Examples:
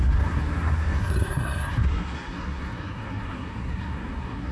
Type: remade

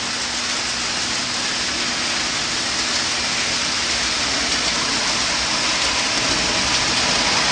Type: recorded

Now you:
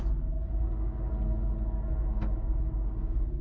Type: recorded